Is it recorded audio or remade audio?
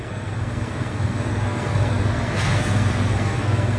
remade